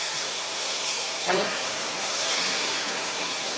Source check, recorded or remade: remade